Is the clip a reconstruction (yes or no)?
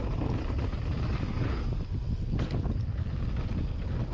no